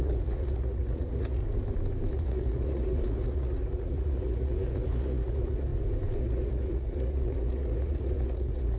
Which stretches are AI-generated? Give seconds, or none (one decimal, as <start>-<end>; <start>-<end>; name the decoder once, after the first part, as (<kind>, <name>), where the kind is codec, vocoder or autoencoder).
0.0-1.4 (vocoder, Vocos); 2.1-5.7; 6.2-8.8